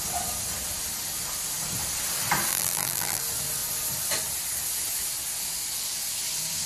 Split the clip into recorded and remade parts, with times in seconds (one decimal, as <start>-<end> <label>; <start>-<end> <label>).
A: 0.0-2.5 recorded; 2.5-3.2 remade; 3.2-6.7 recorded